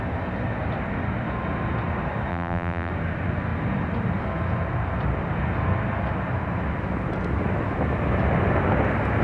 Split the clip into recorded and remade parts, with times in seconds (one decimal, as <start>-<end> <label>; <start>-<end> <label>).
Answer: 0.0-2.3 recorded; 2.3-2.9 remade; 2.9-9.2 recorded